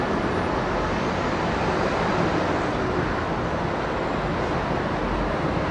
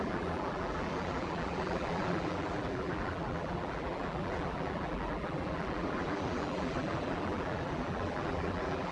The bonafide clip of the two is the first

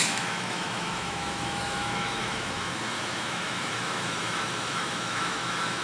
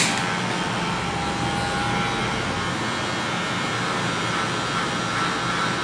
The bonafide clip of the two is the second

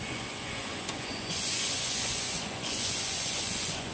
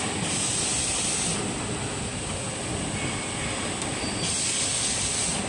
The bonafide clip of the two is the second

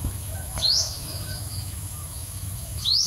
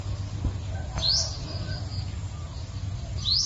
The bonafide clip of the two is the second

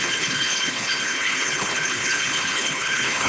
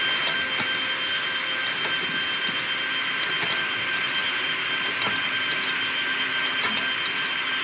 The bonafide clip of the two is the second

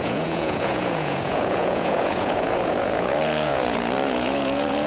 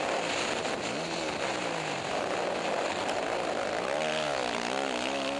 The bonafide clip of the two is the second